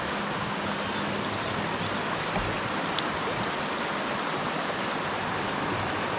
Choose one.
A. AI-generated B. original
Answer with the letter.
B